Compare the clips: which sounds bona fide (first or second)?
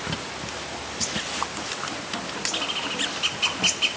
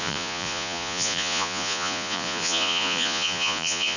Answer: first